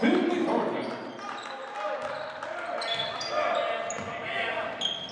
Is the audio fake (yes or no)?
no